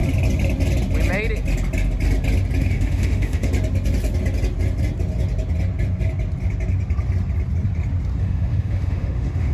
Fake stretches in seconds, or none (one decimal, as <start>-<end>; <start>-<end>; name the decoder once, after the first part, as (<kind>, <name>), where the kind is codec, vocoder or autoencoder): 2.6-3.5 (autoencoder, DAC-VAE); 8.2-9.5